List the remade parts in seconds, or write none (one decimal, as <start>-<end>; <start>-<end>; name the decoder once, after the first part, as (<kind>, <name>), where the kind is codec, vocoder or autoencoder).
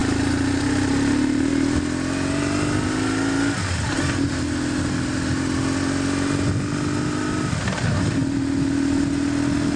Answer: none